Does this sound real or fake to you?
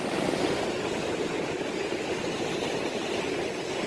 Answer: real